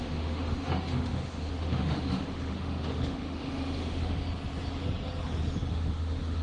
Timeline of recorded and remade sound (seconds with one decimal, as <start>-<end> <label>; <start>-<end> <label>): 0.0-4.1 remade; 4.1-5.7 recorded; 5.7-6.4 remade